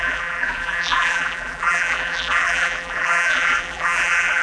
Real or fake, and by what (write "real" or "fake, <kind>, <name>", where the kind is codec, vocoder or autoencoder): fake, vocoder, BigVGAN v2